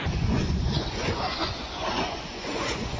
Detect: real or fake fake